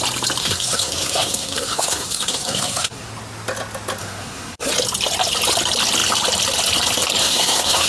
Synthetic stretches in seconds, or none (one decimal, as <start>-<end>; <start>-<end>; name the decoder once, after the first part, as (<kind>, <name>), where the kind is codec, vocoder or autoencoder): 0.4-3.1 (codec, SNAC); 4.0-4.7; 7.2-7.9